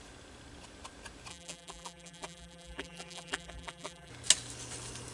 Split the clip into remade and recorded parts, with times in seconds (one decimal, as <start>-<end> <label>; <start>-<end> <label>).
0.0-1.3 recorded; 1.3-4.1 remade; 4.1-5.1 recorded